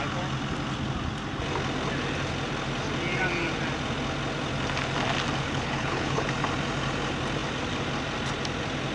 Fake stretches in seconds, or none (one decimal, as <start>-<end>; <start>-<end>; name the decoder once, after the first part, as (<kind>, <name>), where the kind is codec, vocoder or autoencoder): 5.4-6.3 (codec, HILCodec)